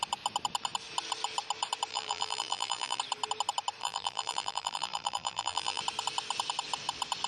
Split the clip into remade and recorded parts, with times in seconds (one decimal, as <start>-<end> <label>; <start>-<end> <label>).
0.0-1.9 recorded; 1.9-3.0 remade; 3.0-3.8 recorded; 3.8-5.8 remade; 5.8-7.3 recorded

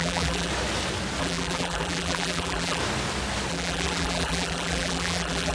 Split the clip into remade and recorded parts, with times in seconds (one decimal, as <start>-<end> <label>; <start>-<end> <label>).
0.0-0.5 remade; 0.5-1.2 recorded; 1.2-2.8 remade; 2.8-3.5 recorded; 3.5-5.5 remade

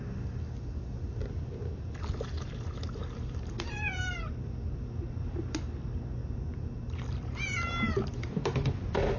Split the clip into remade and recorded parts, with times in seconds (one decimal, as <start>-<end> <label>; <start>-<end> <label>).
0.0-3.0 recorded; 3.0-4.3 remade; 4.3-6.2 recorded; 6.2-7.7 remade; 7.7-9.2 recorded

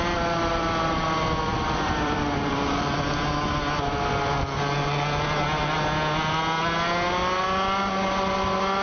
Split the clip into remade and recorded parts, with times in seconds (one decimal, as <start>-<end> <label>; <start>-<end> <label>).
0.0-1.5 recorded; 1.5-2.5 remade; 2.5-8.8 recorded